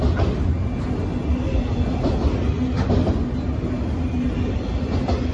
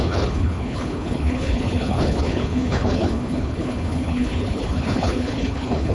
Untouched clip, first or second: first